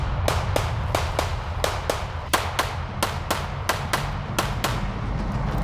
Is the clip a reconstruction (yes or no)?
no